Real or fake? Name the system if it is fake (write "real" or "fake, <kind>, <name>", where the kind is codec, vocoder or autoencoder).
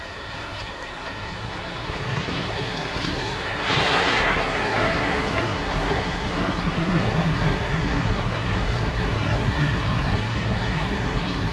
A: fake, codec, SNAC